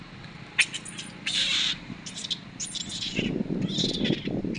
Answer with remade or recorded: recorded